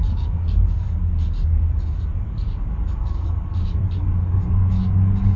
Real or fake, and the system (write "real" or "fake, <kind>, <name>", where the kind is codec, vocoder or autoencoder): fake, codec, DAC